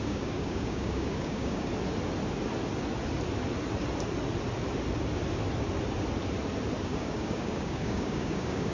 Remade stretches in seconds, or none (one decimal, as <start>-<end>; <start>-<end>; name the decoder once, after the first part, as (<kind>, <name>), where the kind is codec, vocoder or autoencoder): 0.0-1.7 (codec, DAC); 6.8-8.7